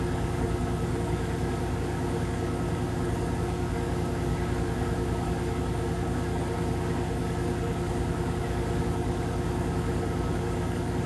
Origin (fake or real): fake